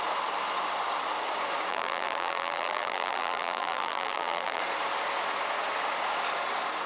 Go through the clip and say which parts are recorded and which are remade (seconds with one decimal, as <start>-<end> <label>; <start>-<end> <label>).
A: 0.0-1.7 recorded; 1.7-4.6 remade; 4.6-6.9 recorded